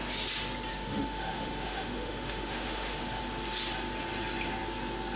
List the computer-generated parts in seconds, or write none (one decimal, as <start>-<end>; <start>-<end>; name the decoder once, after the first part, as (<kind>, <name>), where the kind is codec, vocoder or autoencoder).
0.7-3.2 (autoencoder, DAC-VAE)